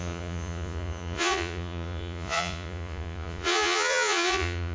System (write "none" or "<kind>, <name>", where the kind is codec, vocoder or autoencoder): vocoder, Vocos